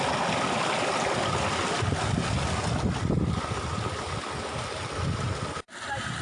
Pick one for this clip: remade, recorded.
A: recorded